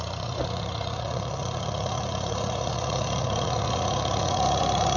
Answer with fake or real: fake